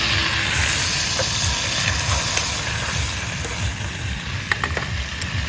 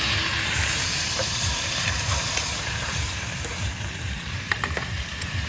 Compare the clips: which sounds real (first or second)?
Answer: first